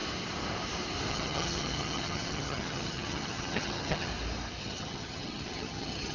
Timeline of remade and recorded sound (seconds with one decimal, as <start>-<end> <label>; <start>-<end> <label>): 0.0-1.1 recorded; 1.1-4.1 remade; 4.1-4.6 recorded; 4.6-6.1 remade